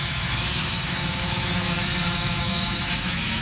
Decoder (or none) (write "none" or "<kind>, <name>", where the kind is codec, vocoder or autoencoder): autoencoder, DAC-VAE